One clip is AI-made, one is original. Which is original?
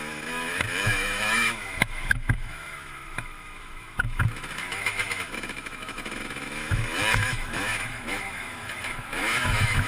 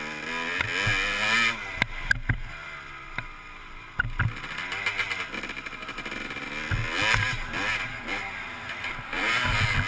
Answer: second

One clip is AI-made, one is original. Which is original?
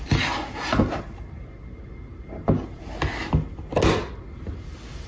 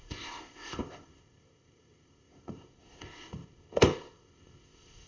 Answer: first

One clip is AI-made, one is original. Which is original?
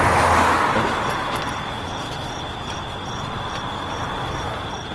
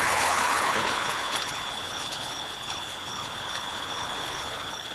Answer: first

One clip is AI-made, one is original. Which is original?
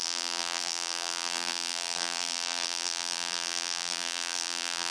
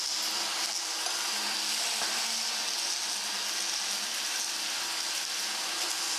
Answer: second